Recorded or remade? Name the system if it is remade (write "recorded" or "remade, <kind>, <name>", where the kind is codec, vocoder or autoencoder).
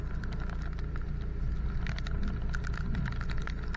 recorded